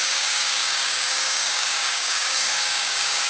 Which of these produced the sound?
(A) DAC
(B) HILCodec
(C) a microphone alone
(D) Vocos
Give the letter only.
A